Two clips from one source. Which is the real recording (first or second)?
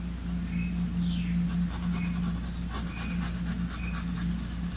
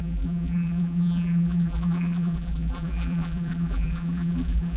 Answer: first